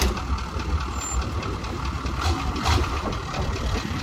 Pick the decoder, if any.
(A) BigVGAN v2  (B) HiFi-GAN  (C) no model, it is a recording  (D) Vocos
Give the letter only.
C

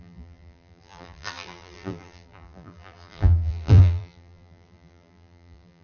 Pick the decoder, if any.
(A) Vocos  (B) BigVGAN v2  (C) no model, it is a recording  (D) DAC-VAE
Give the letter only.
B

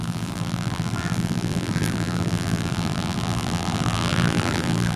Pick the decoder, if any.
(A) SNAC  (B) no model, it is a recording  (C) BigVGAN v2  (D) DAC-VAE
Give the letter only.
C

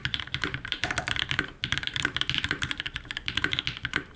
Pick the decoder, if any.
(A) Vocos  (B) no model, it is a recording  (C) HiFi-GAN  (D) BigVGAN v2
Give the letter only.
D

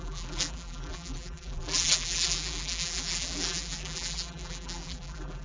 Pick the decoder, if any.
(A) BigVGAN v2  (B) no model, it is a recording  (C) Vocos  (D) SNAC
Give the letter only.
A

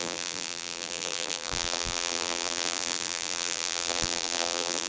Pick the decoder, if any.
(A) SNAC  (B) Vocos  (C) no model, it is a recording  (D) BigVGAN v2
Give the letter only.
D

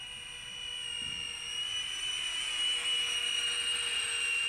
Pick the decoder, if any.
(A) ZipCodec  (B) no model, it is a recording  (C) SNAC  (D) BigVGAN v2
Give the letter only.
B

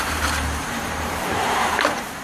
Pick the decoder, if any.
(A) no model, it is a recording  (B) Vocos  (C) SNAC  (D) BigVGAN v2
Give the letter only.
D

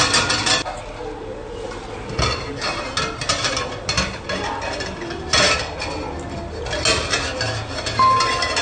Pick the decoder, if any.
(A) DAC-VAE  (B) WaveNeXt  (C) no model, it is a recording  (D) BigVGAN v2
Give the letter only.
C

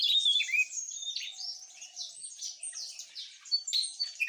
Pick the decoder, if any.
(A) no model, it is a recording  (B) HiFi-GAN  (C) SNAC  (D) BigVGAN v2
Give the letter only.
D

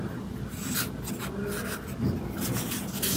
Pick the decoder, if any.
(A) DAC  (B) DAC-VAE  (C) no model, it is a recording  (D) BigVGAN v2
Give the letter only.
C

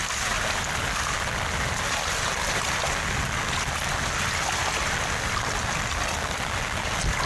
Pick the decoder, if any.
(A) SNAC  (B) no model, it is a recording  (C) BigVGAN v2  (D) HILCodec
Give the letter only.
B